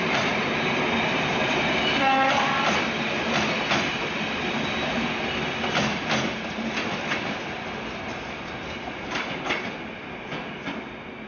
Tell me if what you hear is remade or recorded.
recorded